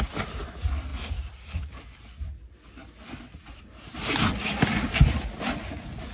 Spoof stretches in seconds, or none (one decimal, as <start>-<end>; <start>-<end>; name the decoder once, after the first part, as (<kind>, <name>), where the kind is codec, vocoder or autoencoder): none